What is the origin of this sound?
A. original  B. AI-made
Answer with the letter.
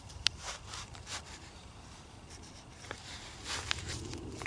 B